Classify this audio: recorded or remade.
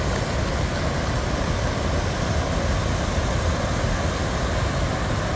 recorded